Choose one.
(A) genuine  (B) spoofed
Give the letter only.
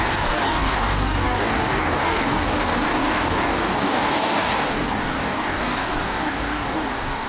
B